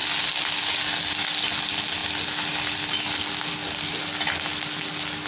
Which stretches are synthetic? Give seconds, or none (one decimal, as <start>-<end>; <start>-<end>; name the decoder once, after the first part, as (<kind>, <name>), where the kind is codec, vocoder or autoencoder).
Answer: none